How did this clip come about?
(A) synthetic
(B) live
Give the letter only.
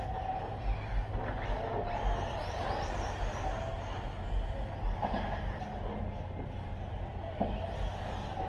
B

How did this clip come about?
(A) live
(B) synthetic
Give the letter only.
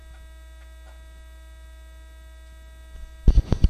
A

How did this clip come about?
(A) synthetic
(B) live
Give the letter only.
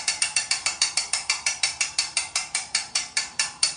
A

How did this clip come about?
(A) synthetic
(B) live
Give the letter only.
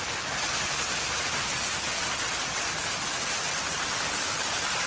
A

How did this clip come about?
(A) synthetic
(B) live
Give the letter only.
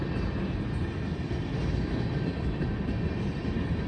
B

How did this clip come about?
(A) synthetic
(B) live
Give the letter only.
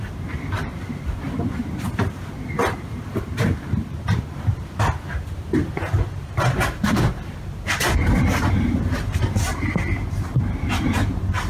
A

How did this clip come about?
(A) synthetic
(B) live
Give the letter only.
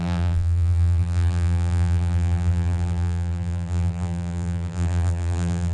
A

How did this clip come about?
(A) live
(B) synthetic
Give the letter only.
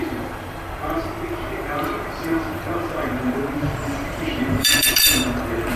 B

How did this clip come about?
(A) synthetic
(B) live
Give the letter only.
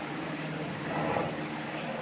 A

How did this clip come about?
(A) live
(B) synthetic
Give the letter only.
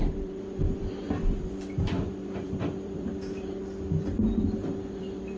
B